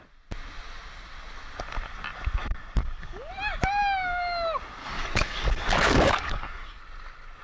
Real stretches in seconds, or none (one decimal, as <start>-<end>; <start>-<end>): 0.0-2.8; 3.3-4.8; 6.8-7.4